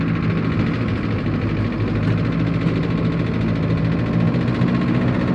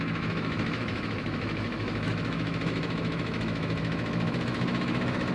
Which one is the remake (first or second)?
second